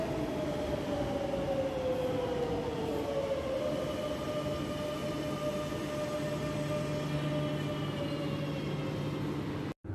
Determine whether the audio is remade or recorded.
recorded